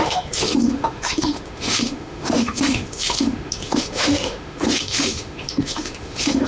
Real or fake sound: fake